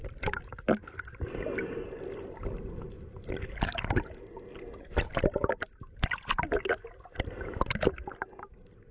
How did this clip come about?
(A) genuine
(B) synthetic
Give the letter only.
A